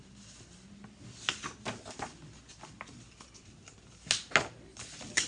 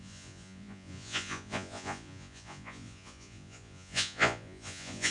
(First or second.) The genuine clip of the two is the first